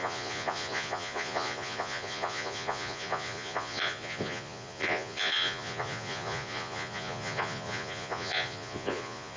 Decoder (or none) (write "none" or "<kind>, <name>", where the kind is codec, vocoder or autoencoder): vocoder, Vocos